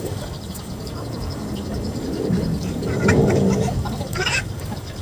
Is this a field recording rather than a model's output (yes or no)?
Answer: no